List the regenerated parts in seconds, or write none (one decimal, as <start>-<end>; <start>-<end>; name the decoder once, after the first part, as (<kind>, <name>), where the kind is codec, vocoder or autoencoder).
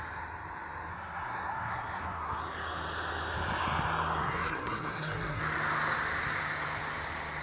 0.9-2.4 (codec, SNAC); 4.2-5.4